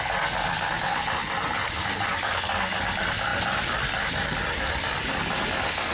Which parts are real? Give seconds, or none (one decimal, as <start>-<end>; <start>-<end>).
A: 0.0-5.9